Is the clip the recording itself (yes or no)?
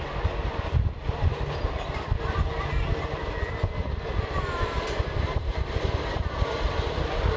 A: yes